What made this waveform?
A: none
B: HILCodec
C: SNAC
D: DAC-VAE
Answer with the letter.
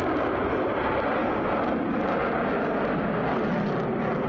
A